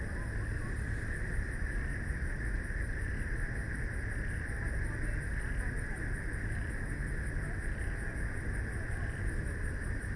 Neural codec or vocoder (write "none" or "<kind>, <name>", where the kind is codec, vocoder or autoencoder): none